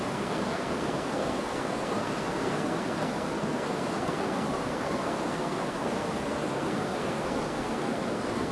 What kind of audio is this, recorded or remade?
remade